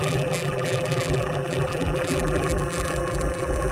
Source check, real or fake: fake